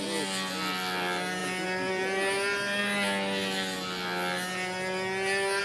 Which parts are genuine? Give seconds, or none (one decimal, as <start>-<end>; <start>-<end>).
0.0-5.6